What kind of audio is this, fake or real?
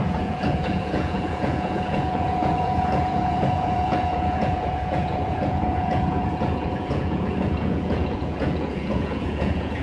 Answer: fake